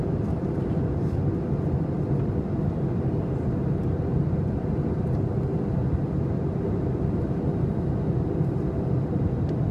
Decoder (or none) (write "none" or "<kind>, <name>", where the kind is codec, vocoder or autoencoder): none